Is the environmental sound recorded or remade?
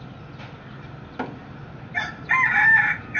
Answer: recorded